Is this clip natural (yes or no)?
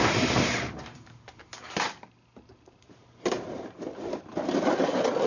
no